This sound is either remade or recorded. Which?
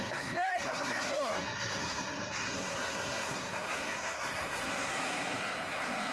remade